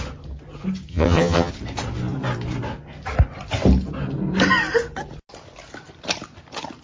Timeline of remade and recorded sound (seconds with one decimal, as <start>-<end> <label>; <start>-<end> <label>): 0.0-0.9 recorded; 0.9-1.5 remade; 1.5-6.8 recorded